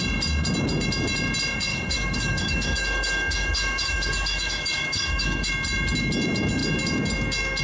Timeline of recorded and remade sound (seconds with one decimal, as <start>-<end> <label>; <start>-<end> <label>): 0.0-1.7 recorded; 1.7-5.5 remade; 5.5-7.6 recorded